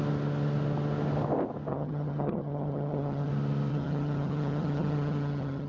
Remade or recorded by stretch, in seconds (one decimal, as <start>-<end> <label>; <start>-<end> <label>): 0.0-1.7 recorded; 1.7-3.3 remade; 3.3-3.7 recorded; 3.7-5.7 remade